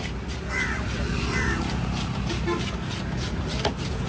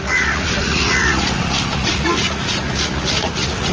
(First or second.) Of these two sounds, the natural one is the first